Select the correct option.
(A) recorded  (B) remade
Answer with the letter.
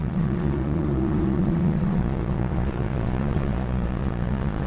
B